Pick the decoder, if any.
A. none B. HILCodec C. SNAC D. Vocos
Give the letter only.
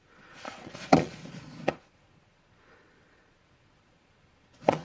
D